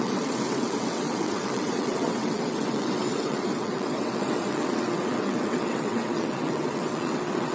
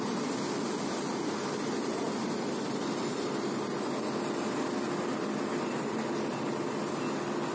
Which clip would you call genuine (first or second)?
second